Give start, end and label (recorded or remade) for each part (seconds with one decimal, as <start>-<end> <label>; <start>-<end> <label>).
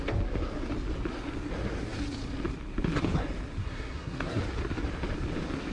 0.0-3.6 recorded; 3.6-4.4 remade; 4.4-5.7 recorded